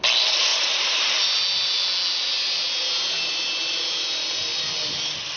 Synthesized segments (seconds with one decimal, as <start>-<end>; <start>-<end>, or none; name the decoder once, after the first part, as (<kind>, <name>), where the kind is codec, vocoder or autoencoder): none